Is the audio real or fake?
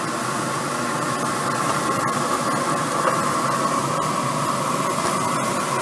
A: real